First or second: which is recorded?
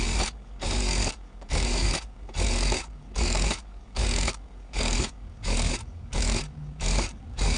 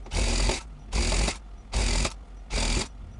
second